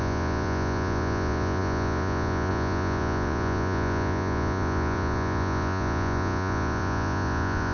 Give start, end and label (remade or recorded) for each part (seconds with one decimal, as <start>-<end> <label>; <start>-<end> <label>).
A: 0.0-7.7 remade